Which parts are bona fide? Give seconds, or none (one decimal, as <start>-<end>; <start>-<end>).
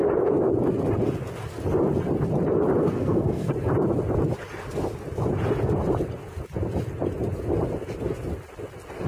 0.0-2.8; 3.5-9.1